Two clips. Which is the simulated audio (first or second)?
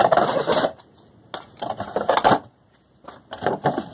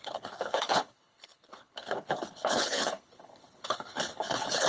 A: second